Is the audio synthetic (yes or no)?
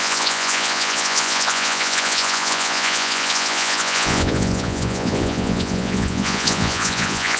yes